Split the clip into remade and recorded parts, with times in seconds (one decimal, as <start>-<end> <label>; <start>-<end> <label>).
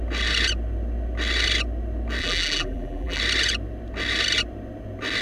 0.0-2.2 recorded; 2.2-3.2 remade; 3.2-5.2 recorded